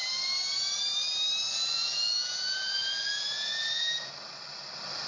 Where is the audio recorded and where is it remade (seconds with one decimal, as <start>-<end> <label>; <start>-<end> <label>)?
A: 0.0-1.5 recorded; 1.5-4.1 remade; 4.1-5.1 recorded